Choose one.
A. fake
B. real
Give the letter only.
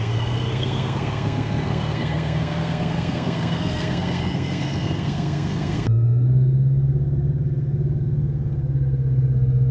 A